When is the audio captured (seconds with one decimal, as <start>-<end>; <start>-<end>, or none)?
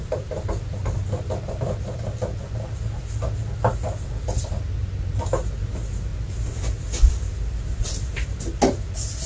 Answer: 0.0-9.3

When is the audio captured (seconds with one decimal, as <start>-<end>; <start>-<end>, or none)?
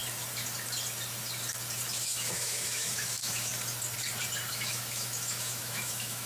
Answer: 0.0-2.0; 3.5-4.5